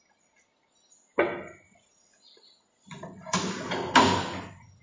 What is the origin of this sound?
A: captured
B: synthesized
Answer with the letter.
A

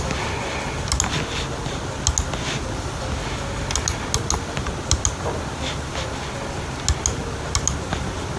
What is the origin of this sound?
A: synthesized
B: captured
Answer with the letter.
B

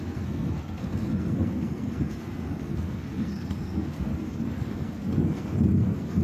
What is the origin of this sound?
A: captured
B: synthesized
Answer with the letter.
B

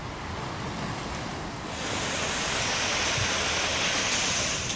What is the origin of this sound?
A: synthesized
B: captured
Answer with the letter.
B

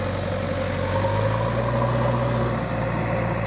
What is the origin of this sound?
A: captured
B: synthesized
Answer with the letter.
A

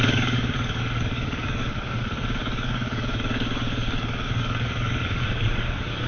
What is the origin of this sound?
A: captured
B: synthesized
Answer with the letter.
B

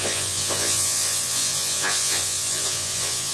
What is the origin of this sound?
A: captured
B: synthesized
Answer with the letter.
B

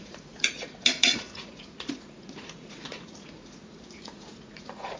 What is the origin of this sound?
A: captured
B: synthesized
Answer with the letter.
B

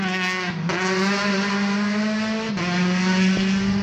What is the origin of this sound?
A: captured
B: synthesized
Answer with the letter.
A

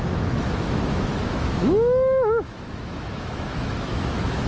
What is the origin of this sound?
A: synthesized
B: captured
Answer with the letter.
A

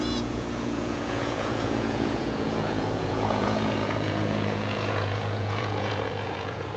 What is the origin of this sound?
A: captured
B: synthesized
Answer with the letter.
B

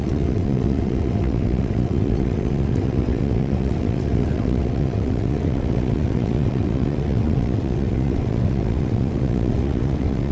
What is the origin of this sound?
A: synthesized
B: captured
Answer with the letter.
A